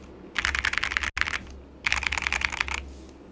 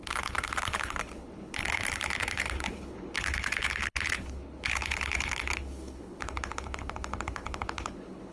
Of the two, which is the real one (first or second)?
first